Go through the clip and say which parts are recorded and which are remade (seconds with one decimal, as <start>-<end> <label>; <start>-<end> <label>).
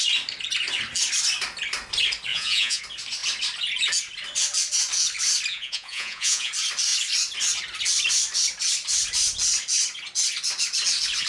0.0-2.3 recorded; 2.3-2.8 remade; 2.8-5.5 recorded; 5.5-6.5 remade; 6.5-11.3 recorded